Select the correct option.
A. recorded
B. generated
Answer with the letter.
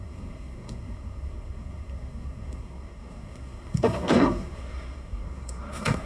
B